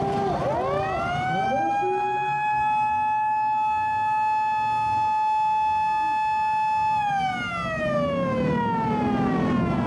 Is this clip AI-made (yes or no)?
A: no